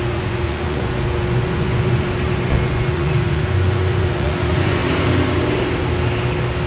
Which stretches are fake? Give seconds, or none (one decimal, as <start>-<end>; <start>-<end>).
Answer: 0.0-4.8